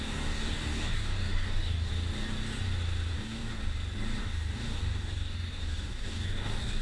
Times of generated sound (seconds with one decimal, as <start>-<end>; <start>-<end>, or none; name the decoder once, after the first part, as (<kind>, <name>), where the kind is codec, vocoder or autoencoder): 0.0-1.9 (codec, DAC); 3.1-3.6; 4.2-6.8